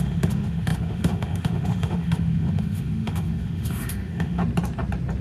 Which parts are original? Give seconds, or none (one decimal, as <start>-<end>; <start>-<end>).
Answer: 4.4-5.2